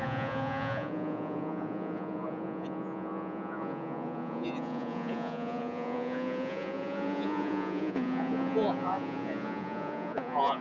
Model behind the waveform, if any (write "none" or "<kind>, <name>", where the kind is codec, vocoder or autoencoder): vocoder, Vocos